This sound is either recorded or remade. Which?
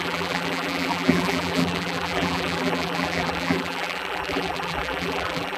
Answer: remade